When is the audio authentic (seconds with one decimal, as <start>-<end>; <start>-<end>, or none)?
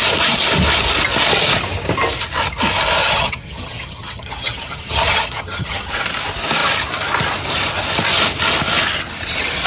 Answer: 0.0-3.0; 5.9-9.7